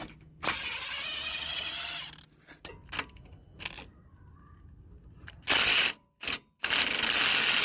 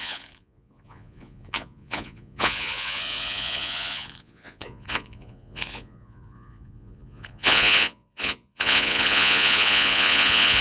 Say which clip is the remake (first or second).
second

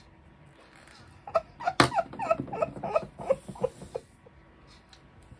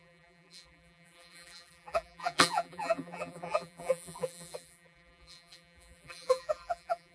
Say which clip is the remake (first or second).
second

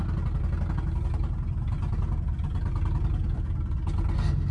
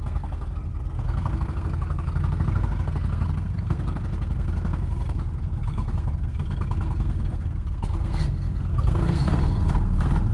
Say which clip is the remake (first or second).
second